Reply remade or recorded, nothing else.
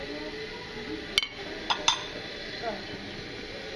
recorded